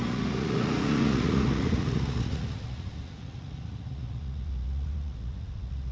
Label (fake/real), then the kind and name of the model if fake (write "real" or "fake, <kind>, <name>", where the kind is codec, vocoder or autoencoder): fake, vocoder, Vocos